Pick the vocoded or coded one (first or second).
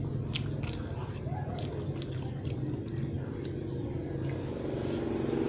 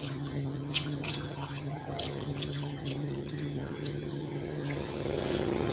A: second